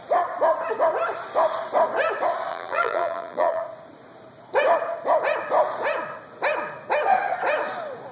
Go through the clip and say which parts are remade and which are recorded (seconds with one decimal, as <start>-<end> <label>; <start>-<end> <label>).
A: 0.0-2.5 recorded; 2.5-3.6 remade; 3.6-8.1 recorded